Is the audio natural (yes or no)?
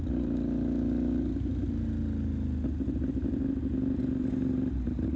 yes